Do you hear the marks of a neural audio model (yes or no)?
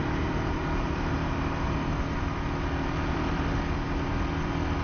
no